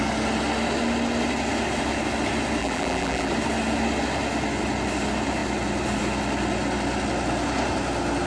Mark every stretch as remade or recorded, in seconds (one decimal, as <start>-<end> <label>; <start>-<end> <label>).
0.0-2.6 recorded; 2.6-3.3 remade; 3.3-8.3 recorded